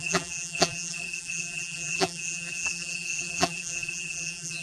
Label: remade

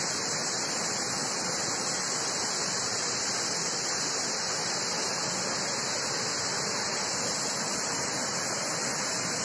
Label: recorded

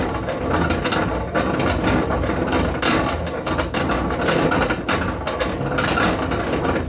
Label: recorded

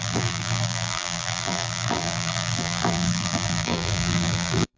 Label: remade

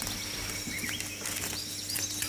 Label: recorded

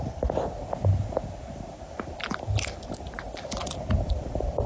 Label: remade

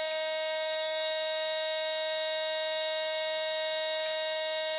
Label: recorded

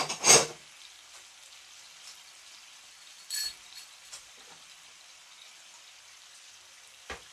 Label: remade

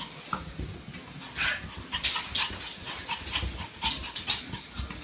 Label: recorded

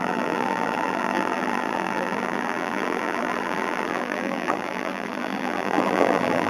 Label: remade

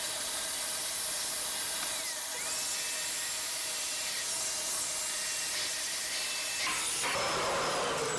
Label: recorded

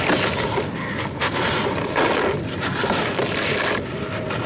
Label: recorded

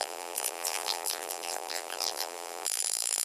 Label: remade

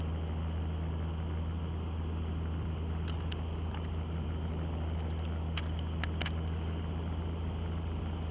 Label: recorded